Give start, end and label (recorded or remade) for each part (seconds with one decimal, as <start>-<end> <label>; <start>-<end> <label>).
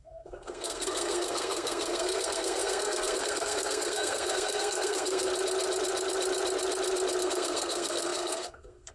0.0-5.3 remade; 5.3-7.2 recorded; 7.2-8.9 remade